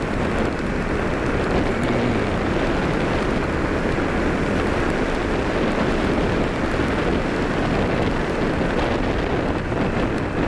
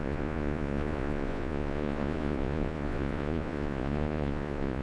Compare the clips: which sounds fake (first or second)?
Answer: second